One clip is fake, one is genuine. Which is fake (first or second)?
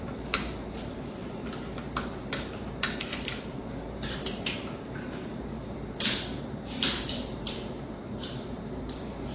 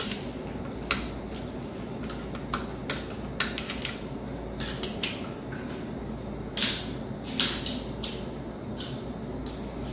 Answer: first